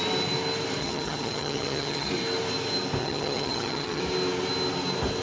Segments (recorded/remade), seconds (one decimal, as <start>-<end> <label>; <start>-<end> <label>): 0.0-0.8 recorded; 0.8-2.1 remade; 2.1-3.0 recorded; 3.0-4.0 remade; 4.0-5.2 recorded